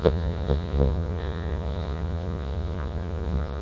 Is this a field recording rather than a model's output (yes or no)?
no